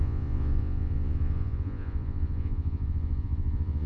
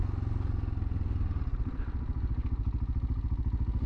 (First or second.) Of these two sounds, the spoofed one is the first